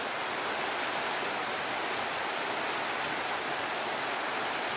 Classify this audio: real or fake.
real